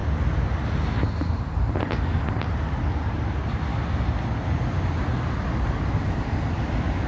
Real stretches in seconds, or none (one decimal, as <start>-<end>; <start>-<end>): 0.0-7.1